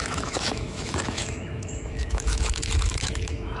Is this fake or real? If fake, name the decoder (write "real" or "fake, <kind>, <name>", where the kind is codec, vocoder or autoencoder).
fake, autoencoder, DAC-VAE